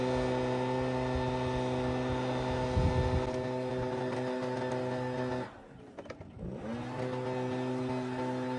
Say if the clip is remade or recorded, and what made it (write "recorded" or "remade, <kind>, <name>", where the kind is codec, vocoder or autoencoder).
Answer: recorded